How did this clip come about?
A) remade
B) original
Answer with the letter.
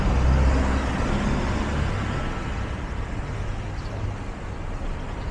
B